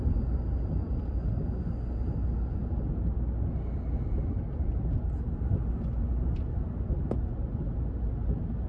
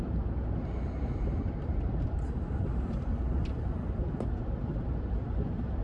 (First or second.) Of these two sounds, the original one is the first